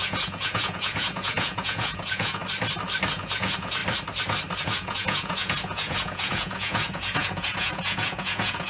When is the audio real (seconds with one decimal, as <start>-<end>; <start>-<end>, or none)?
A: 2.4-3.1; 3.8-4.6